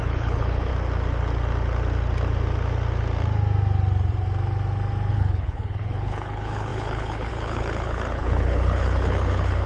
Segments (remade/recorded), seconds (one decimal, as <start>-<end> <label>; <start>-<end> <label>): 0.0-0.7 remade; 0.7-5.1 recorded; 5.1-9.7 remade